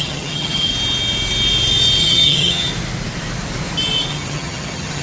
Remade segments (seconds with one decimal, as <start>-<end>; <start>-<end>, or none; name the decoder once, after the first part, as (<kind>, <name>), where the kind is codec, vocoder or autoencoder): 0.0-0.7 (vocoder, HiFi-GAN); 2.0-2.7; 4.1-5.0